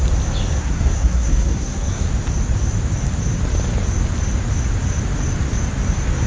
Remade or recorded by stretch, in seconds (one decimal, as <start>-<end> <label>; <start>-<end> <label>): 0.0-0.6 recorded; 0.6-2.1 remade; 2.1-6.3 recorded